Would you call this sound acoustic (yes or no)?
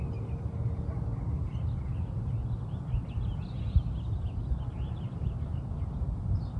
yes